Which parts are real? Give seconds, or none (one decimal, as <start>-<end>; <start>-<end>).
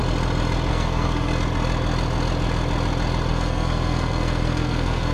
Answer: 0.0-0.7; 1.3-3.3